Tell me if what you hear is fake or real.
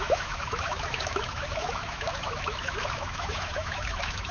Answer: fake